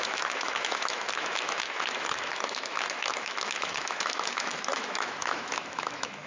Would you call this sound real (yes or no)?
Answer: no